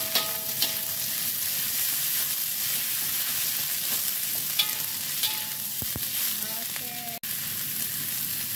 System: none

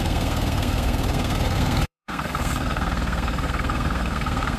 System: codec, SNAC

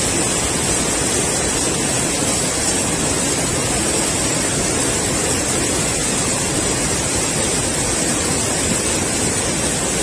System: none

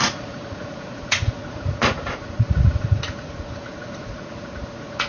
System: vocoder, Vocos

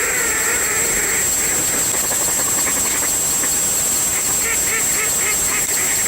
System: none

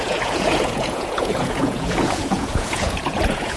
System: vocoder, Vocos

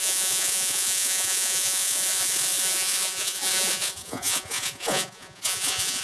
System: vocoder, Vocos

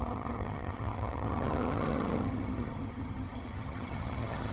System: vocoder, HiFi-GAN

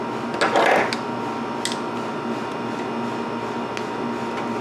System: none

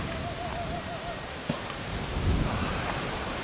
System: vocoder, BigVGAN v2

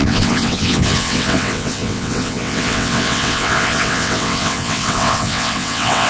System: vocoder, WaveNeXt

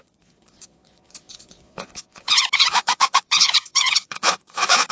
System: vocoder, Vocos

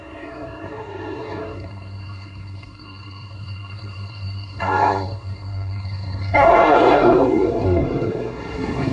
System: codec, SNAC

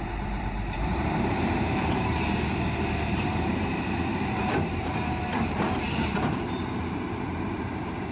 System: vocoder, BigVGAN v2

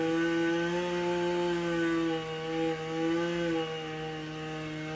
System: none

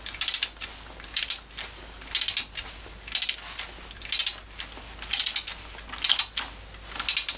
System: none